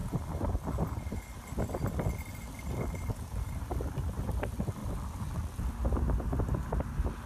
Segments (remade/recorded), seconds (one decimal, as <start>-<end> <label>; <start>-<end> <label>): 0.0-4.8 recorded; 4.8-6.3 remade; 6.3-7.3 recorded